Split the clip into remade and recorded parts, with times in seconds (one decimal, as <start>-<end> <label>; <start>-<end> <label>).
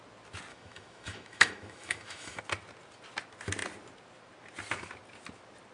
0.0-0.5 recorded; 0.5-2.4 remade; 2.4-5.7 recorded